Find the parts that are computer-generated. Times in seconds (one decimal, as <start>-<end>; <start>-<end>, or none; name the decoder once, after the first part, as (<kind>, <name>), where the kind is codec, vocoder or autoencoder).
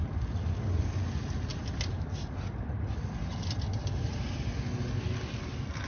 none